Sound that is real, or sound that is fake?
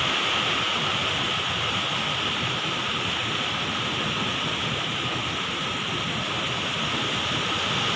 real